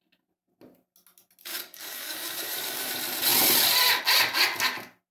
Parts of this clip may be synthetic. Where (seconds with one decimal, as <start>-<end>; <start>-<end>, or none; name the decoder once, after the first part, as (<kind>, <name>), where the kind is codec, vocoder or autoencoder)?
1.4-2.9 (codec, DAC)